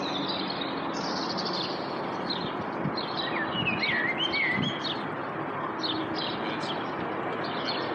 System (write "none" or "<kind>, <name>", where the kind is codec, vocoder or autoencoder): none